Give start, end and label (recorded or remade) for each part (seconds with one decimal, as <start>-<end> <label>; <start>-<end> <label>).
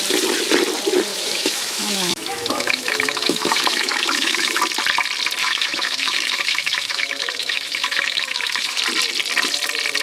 0.0-1.1 recorded; 1.1-4.6 remade; 4.6-5.4 recorded; 5.4-8.8 remade; 8.8-10.0 recorded